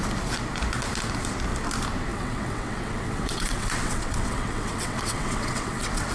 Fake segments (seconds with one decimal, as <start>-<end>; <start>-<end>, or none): 2.1-6.1